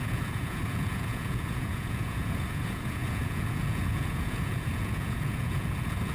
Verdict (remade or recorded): remade